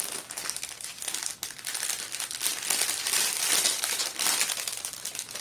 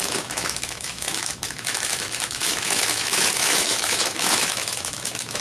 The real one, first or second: first